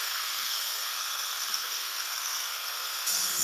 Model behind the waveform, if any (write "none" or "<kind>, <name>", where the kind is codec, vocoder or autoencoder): codec, SNAC